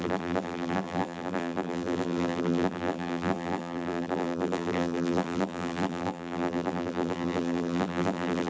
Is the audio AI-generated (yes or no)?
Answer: yes